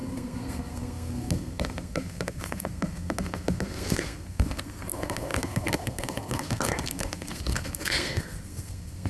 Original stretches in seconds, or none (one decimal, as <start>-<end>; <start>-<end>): none